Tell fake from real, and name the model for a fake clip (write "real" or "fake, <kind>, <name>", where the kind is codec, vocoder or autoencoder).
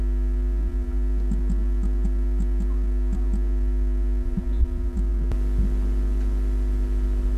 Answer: real